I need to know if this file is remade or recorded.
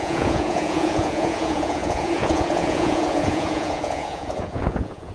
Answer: remade